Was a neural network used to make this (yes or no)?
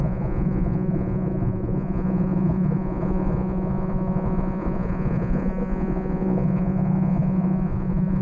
yes